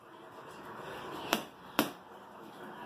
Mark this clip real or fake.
real